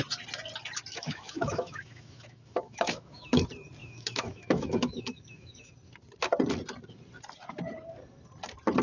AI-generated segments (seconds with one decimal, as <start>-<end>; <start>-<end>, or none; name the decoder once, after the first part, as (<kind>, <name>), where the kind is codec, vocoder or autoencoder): 0.9-3.4 (autoencoder, DAC-VAE); 3.8-5.7